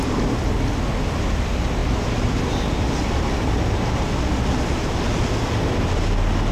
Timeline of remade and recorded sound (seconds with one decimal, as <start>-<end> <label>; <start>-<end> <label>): 0.0-6.5 recorded